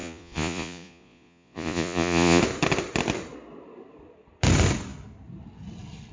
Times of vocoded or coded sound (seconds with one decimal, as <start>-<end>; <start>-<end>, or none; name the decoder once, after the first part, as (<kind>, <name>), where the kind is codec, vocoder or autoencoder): 0.0-2.4 (vocoder, Vocos)